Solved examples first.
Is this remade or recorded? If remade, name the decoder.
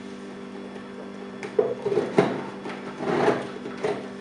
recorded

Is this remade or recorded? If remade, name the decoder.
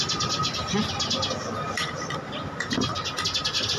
recorded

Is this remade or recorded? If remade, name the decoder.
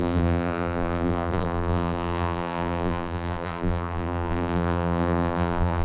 remade, vocoder, BigVGAN v2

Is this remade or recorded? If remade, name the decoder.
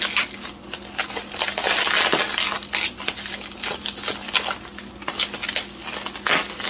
recorded